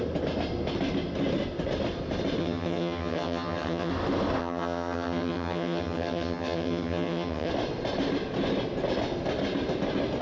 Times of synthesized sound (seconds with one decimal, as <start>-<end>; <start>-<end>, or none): 2.4-3.9; 4.4-7.5